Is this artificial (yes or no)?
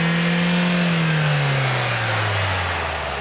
no